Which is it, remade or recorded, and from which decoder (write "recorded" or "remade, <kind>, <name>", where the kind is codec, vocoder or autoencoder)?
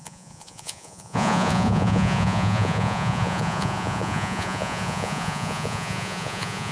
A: remade, vocoder, Vocos